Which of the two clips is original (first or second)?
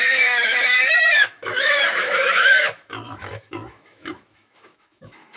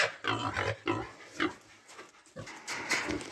second